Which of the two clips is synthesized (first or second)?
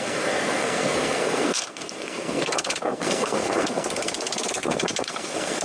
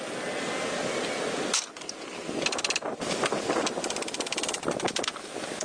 first